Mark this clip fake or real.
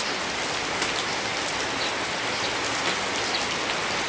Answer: real